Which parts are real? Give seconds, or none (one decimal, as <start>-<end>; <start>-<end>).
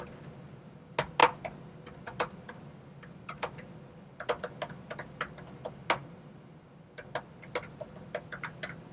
0.0-8.9